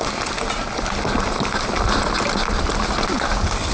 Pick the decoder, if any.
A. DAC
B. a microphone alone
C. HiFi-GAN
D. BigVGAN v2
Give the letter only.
B